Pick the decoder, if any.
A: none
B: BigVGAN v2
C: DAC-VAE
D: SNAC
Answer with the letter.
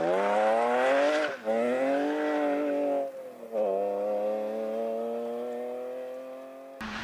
A